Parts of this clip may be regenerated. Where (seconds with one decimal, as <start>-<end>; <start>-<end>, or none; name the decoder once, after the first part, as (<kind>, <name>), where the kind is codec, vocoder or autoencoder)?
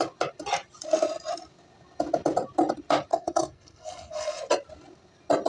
3.1-4.4 (codec, SNAC)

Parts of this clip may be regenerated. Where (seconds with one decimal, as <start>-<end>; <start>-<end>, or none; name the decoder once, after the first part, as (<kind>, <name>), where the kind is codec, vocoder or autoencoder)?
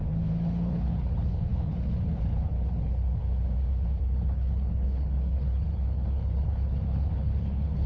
0.0-3.2 (codec, HILCodec); 4.0-7.9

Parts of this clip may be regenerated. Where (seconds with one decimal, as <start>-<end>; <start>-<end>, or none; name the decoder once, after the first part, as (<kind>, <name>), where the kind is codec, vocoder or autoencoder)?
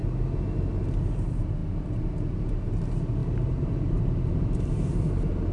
0.9-5.5 (vocoder, BigVGAN v2)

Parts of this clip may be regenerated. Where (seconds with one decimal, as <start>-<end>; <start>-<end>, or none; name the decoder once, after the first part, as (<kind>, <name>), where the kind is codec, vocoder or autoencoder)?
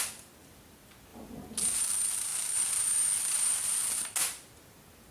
none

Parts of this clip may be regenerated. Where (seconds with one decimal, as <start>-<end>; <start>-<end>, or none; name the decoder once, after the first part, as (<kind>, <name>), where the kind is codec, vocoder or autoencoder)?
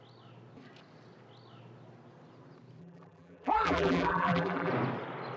2.8-4.7 (vocoder, BigVGAN v2)